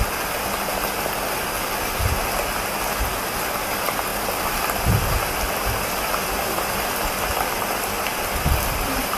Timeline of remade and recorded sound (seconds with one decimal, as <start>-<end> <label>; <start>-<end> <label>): 0.0-4.1 recorded; 4.1-9.2 remade